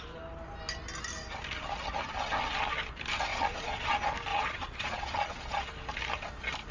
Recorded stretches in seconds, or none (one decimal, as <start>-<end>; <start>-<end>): 0.0-3.3; 3.9-4.3; 5.7-6.7